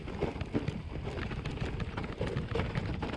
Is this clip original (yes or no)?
yes